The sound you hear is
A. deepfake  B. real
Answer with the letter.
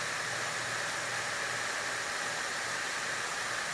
B